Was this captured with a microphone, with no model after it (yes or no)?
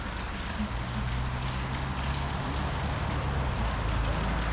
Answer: yes